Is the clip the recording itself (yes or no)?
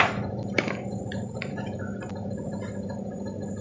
yes